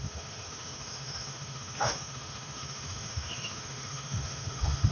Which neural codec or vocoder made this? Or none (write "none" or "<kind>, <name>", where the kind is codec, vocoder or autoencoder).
autoencoder, DAC-VAE